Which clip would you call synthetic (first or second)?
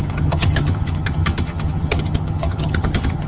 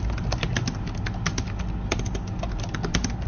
first